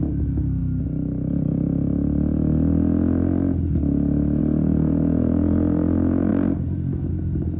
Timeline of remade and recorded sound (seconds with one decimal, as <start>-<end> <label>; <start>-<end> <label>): 0.0-7.6 recorded